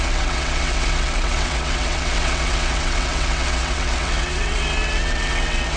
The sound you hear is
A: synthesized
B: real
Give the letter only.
A